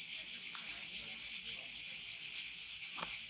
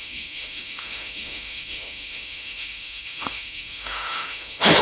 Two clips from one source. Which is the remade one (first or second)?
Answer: second